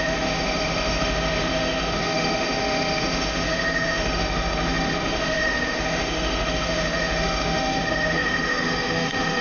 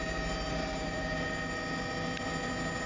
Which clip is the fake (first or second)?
first